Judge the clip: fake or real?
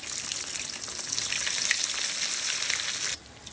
real